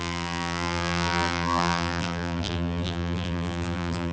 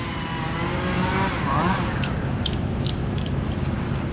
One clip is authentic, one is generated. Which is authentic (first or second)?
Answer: second